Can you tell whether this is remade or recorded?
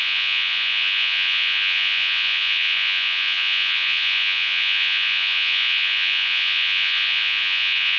remade